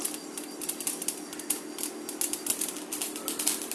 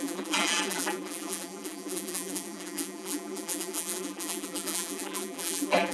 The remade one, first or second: second